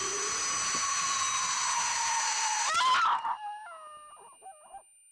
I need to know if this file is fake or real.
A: real